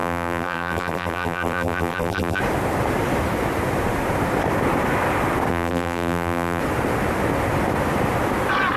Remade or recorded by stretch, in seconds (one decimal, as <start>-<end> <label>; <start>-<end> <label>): 0.0-2.4 remade; 2.4-5.5 recorded; 5.5-6.6 remade; 6.6-8.8 recorded